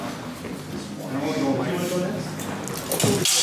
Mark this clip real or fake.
real